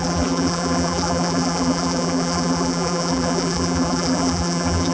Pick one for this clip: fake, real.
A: fake